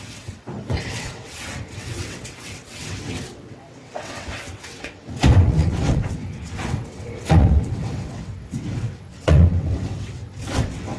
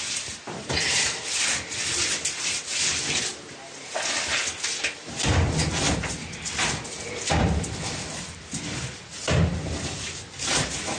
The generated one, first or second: first